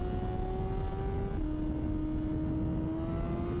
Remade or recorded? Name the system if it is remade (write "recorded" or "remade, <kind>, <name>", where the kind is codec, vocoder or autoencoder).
recorded